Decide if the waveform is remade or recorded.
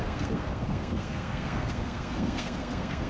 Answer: remade